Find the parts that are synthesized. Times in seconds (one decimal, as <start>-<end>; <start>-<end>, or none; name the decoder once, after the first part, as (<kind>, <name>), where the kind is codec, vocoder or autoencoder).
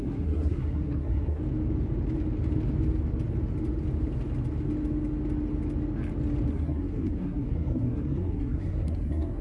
0.0-1.4 (codec, SNAC); 6.5-9.4